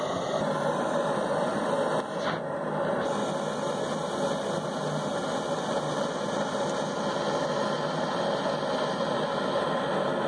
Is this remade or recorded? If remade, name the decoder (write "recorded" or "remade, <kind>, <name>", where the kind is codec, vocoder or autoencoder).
recorded